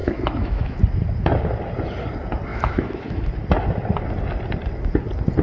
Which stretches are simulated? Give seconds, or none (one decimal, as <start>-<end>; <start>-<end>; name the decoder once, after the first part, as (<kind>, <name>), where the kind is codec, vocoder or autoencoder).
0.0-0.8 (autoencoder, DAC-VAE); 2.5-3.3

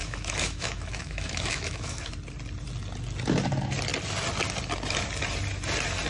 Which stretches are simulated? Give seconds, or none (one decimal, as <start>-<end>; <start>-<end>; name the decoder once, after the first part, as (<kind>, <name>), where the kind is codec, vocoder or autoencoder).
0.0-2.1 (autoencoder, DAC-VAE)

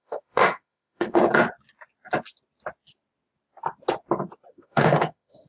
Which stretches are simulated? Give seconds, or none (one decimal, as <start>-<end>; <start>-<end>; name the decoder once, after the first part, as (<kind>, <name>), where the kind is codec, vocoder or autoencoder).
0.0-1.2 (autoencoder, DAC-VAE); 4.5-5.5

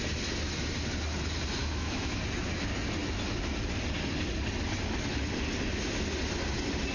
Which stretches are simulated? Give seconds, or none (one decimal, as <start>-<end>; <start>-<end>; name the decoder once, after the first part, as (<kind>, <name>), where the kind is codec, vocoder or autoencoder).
1.6-2.2 (autoencoder, DAC-VAE)